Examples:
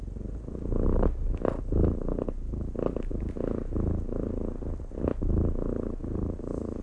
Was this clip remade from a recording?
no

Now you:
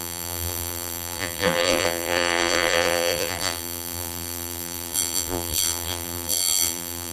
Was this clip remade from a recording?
yes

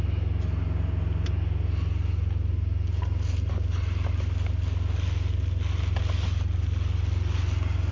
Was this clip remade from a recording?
no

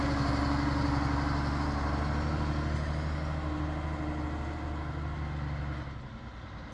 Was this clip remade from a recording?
no